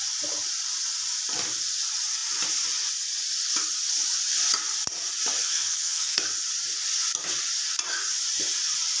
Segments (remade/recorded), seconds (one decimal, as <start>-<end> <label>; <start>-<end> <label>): 0.0-5.4 recorded; 5.4-6.2 remade; 6.2-9.0 recorded